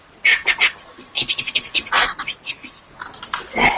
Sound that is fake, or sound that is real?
real